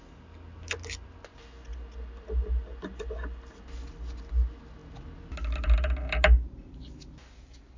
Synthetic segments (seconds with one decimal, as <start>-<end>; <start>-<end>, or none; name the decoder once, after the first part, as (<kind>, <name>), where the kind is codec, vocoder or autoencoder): none